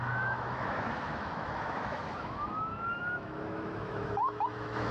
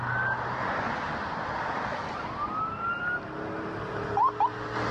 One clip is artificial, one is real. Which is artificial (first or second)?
first